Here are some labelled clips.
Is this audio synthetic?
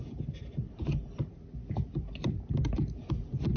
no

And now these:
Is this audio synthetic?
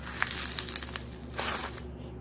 no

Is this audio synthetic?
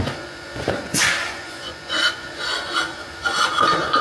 yes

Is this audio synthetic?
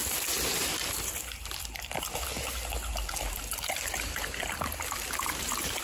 no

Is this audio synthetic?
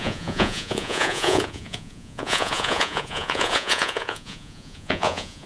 yes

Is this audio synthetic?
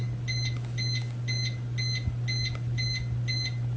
no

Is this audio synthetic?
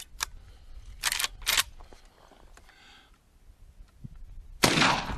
no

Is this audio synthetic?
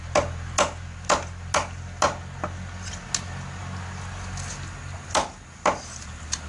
no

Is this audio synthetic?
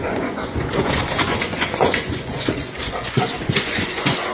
yes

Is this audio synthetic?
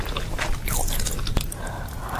no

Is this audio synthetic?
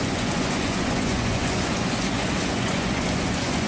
yes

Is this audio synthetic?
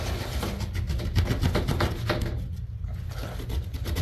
no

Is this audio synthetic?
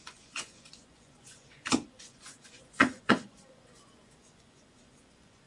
yes